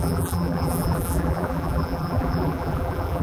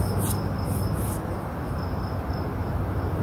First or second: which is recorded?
second